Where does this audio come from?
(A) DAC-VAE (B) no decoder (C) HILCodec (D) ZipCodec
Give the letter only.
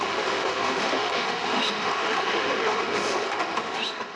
A